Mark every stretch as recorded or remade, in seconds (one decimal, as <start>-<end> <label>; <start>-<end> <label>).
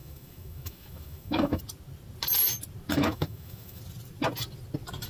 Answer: 0.0-1.6 remade; 1.6-2.9 recorded; 2.9-3.8 remade; 3.8-5.1 recorded